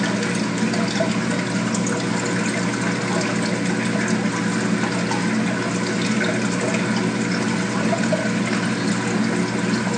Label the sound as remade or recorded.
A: recorded